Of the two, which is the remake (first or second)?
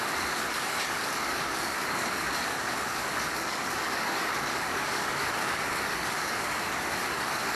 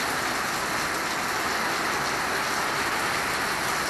first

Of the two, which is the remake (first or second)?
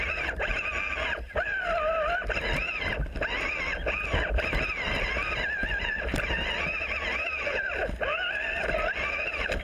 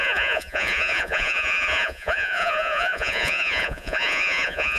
second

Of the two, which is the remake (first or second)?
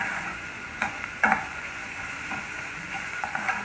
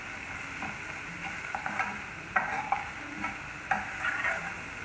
first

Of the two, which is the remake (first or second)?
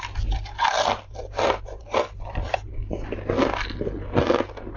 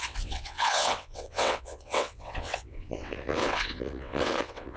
second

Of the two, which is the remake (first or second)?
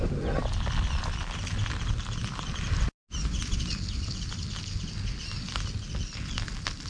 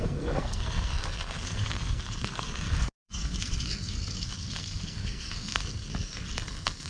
second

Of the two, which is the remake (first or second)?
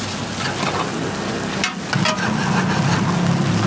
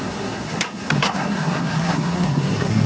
second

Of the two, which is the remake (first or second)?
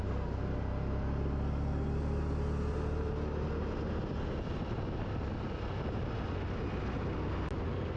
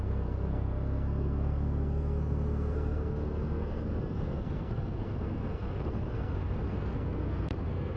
second